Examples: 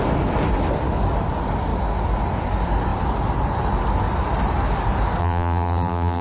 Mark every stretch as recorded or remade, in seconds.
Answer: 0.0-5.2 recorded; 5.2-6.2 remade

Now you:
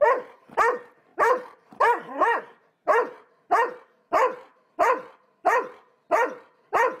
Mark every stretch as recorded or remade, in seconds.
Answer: 0.0-1.1 recorded; 1.1-2.4 remade; 2.4-7.0 recorded

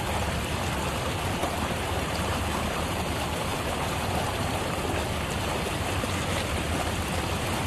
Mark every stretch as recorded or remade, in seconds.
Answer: 0.0-1.4 recorded; 1.4-4.8 remade; 4.8-7.7 recorded

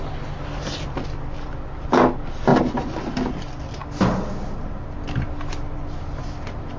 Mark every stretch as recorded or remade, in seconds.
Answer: 0.0-6.8 recorded

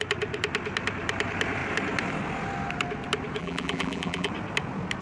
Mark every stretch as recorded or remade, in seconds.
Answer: 0.0-3.4 recorded; 3.4-4.3 remade; 4.3-5.0 recorded

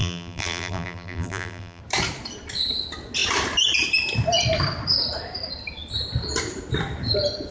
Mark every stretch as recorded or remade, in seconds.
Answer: 0.0-1.8 remade; 1.8-7.5 recorded